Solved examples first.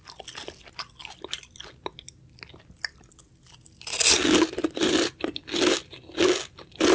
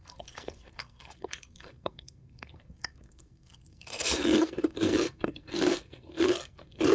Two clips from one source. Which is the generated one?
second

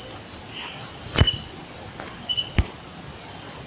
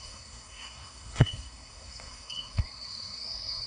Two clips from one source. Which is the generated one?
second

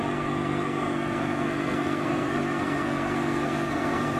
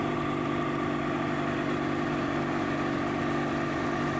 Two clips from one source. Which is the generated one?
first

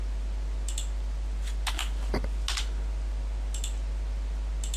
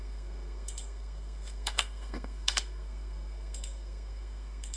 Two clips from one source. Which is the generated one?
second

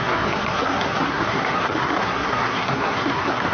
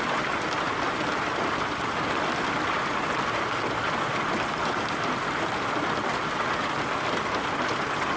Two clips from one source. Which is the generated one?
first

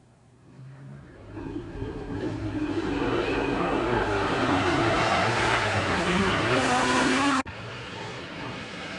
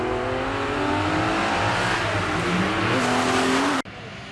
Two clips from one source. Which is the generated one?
first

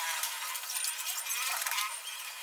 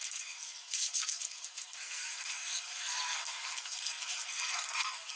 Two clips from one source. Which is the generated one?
second